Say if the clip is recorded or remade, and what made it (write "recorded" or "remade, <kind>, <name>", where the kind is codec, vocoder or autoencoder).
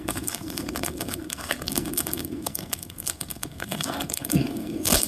remade, codec, SNAC